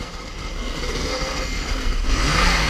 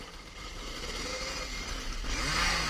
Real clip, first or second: second